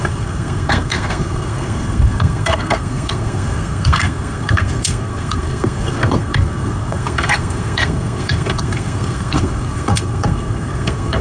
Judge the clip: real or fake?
fake